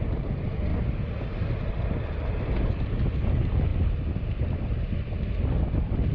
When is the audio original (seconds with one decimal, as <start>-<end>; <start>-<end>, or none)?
0.0-6.1